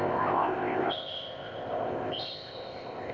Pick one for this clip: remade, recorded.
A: remade